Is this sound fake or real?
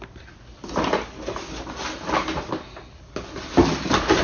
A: real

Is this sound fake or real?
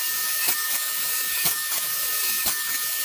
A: fake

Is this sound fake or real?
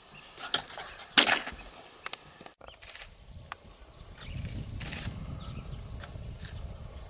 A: real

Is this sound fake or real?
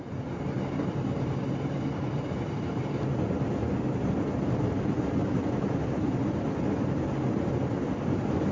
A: real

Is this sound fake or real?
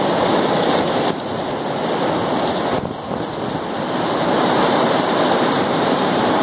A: real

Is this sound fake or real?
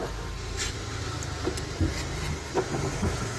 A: real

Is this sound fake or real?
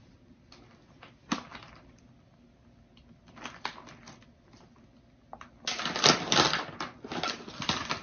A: real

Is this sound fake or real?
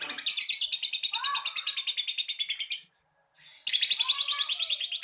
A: real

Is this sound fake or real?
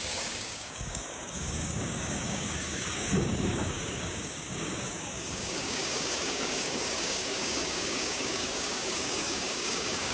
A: fake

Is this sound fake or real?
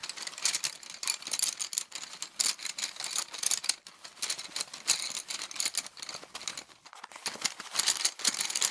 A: real